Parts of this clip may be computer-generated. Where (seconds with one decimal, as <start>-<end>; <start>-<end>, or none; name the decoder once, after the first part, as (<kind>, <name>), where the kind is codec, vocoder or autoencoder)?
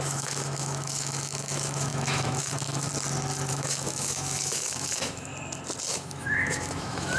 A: 0.0-2.9 (autoencoder, DAC-VAE); 3.5-5.3; 5.9-7.2